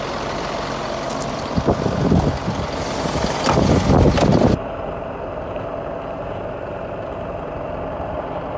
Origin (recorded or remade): recorded